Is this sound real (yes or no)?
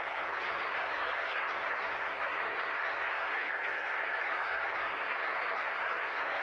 no